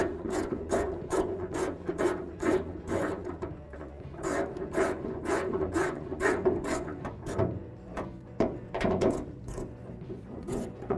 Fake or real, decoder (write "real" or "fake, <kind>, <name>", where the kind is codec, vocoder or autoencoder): fake, vocoder, Vocos